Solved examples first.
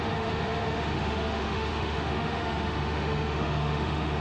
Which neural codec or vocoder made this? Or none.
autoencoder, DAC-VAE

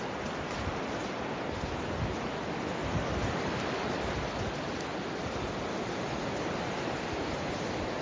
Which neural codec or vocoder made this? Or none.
none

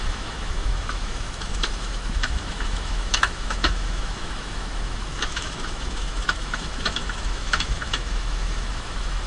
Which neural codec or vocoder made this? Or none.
autoencoder, DAC-VAE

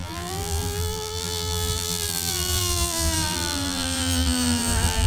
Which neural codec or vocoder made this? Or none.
vocoder, BigVGAN v2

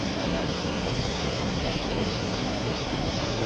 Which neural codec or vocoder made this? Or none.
codec, SNAC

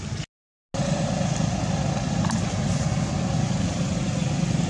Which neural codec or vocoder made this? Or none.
none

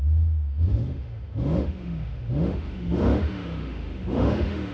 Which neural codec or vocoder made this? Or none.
autoencoder, DAC-VAE